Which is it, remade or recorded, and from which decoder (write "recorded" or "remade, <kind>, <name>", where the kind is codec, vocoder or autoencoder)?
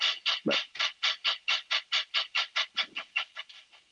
recorded